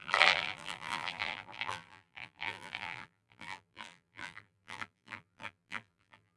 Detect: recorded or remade remade